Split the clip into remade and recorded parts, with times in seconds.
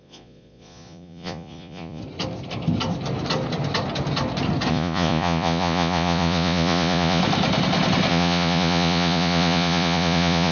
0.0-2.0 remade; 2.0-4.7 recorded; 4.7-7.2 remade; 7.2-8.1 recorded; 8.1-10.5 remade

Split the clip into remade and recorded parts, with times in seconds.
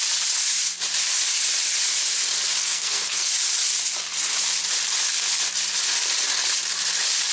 0.0-2.6 recorded; 2.6-3.3 remade; 3.3-7.3 recorded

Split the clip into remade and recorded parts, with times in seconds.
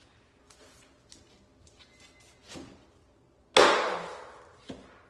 0.0-5.1 recorded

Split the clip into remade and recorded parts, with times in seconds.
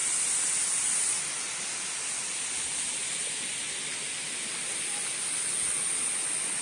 0.0-6.6 recorded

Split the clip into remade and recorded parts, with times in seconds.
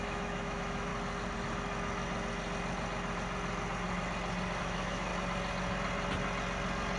0.0-0.9 remade; 0.9-4.6 recorded; 4.6-5.1 remade; 5.1-7.0 recorded